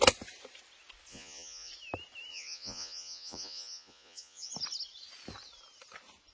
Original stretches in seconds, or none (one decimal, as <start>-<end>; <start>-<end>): 0.0-1.1; 1.7-2.3; 4.5-6.3